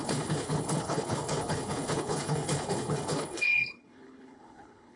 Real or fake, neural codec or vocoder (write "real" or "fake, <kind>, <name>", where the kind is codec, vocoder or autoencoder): fake, codec, HILCodec